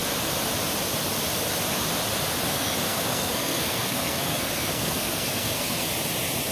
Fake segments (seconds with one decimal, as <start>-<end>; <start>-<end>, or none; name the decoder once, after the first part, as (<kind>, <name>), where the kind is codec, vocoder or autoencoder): 2.5-5.9 (codec, SNAC)